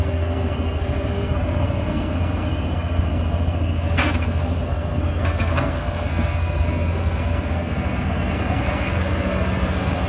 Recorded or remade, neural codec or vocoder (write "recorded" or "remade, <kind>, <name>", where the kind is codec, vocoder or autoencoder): remade, codec, SNAC